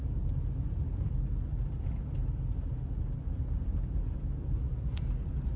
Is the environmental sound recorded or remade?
recorded